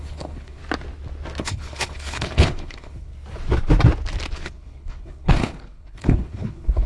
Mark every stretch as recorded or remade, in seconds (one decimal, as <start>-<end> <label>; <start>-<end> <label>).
0.0-0.6 remade; 0.6-1.4 recorded; 1.4-3.1 remade; 3.1-4.3 recorded; 4.3-6.9 remade